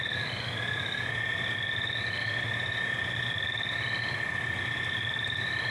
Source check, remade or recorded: recorded